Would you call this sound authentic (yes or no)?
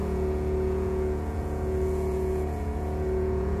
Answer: no